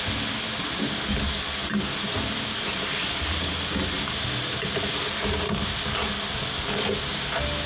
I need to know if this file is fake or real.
real